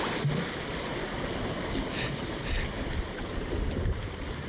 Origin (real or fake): real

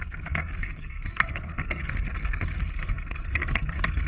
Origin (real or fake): fake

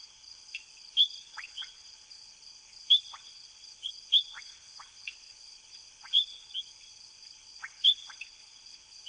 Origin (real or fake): fake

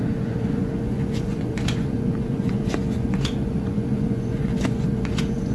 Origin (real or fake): fake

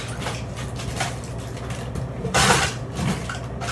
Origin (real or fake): real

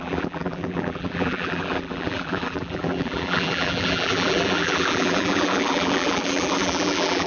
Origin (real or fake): fake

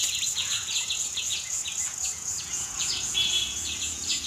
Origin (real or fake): fake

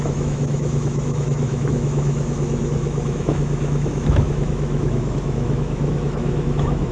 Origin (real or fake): fake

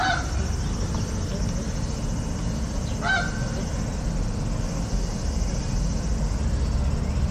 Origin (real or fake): real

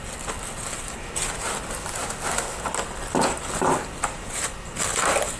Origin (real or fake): real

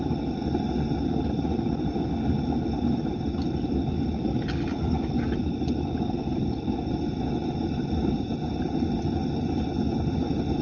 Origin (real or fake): real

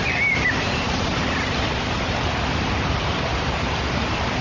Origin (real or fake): fake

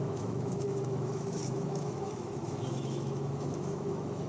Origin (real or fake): fake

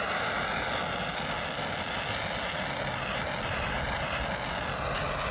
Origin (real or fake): real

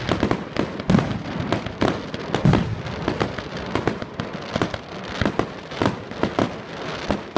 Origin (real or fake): real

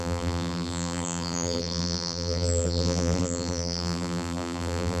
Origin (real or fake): fake